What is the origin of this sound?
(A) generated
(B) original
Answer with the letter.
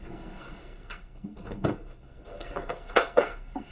A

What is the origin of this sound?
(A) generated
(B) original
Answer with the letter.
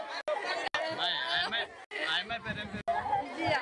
B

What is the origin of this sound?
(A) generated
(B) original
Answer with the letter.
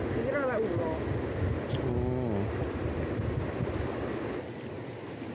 B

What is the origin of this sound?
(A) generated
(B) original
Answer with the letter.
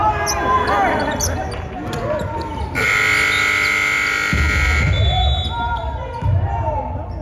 B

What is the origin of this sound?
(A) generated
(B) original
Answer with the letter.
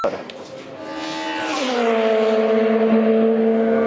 B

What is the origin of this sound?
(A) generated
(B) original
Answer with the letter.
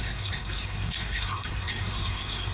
A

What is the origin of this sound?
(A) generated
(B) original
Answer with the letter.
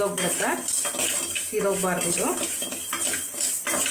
B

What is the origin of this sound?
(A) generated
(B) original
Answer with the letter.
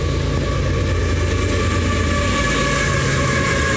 B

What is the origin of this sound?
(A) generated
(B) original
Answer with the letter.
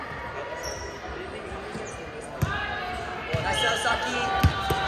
B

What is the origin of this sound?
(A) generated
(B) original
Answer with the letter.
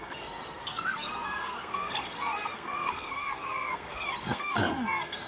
A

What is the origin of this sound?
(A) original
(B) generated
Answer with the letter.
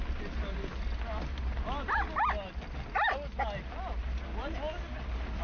A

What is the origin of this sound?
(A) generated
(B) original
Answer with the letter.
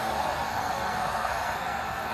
A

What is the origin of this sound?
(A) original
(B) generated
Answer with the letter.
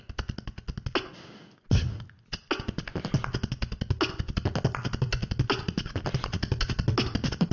A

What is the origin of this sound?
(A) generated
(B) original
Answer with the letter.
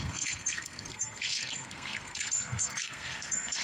A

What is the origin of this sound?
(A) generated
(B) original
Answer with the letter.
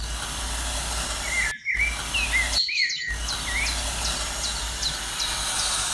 B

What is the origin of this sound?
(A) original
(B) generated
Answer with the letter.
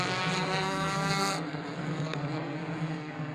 B